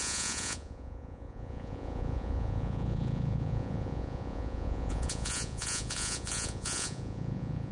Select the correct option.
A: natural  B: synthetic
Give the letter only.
B